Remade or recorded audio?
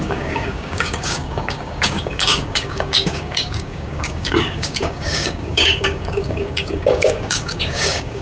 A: remade